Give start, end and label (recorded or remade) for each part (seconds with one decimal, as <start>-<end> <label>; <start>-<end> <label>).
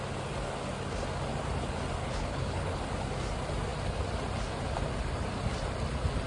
0.0-2.0 recorded; 2.0-2.8 remade; 2.8-6.3 recorded